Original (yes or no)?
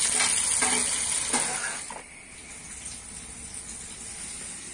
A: yes